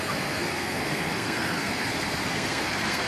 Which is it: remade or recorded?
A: remade